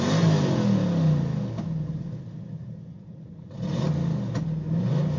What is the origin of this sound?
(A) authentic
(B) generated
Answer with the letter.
A